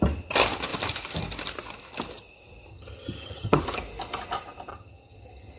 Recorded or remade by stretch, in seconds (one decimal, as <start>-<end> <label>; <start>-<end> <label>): 0.0-2.7 recorded; 2.7-3.6 remade; 3.6-4.7 recorded; 4.7-5.6 remade